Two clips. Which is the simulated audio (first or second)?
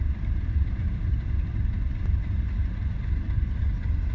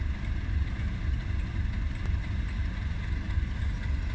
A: first